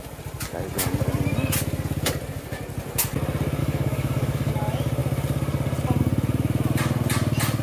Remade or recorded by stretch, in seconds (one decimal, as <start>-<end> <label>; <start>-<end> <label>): 0.0-3.6 recorded; 3.6-4.5 remade; 4.5-7.6 recorded